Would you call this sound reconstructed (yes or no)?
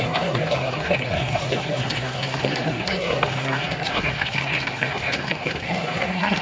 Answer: yes